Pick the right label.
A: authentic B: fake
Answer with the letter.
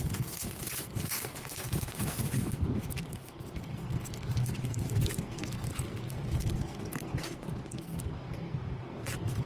B